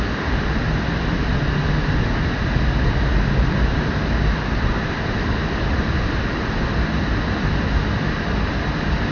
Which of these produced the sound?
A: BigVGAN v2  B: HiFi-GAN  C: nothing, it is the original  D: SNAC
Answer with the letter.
C